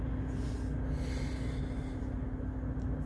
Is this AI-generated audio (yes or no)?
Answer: no